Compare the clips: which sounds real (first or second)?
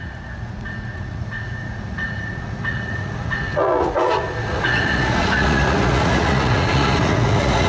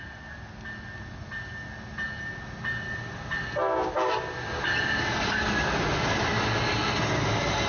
second